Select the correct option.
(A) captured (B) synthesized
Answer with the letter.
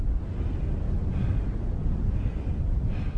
A